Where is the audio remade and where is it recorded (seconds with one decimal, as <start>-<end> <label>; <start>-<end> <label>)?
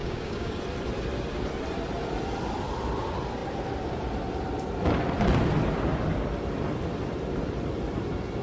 0.0-0.6 remade; 0.6-8.4 recorded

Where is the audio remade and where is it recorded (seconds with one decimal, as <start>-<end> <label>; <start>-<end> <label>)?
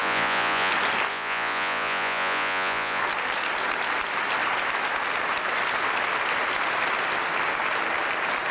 0.0-0.7 remade; 0.7-1.1 recorded; 1.1-3.0 remade; 3.0-8.5 recorded